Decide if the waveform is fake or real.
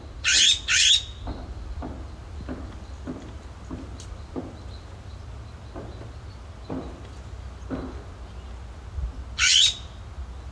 real